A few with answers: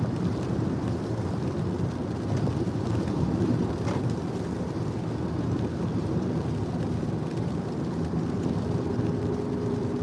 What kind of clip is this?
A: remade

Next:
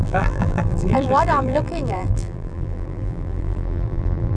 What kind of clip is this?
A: remade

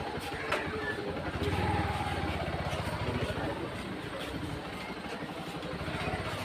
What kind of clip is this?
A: recorded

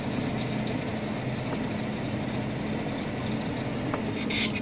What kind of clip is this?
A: recorded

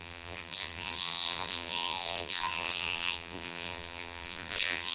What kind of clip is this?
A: remade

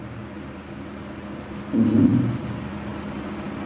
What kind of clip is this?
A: recorded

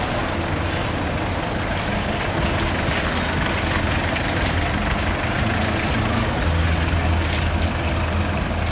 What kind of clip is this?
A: recorded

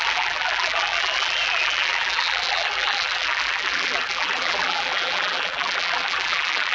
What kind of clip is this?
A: remade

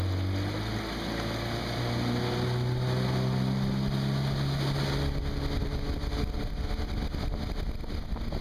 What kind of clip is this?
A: recorded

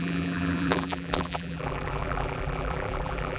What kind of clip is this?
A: remade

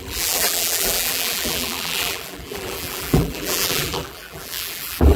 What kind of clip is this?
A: remade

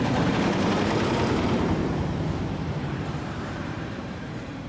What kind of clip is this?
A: remade